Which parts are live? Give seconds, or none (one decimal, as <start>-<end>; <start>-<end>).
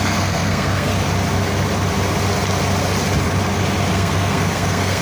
0.9-3.9